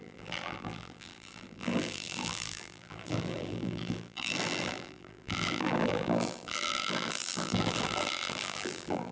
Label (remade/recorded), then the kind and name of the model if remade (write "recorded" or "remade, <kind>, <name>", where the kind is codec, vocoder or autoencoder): remade, vocoder, BigVGAN v2